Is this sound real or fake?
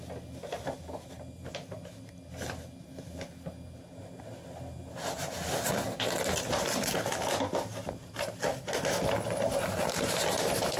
real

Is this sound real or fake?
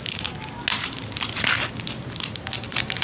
real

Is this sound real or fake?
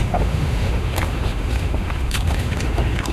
fake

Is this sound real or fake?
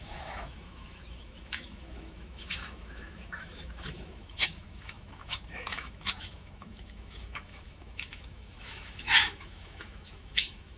fake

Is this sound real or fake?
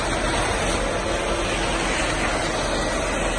real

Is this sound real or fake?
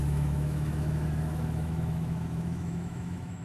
fake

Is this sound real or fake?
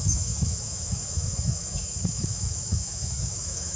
fake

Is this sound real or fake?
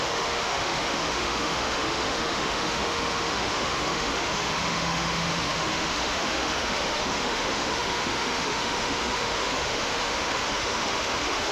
fake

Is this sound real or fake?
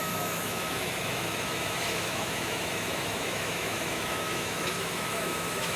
fake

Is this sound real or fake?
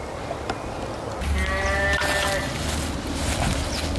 real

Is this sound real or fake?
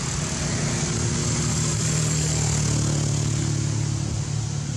real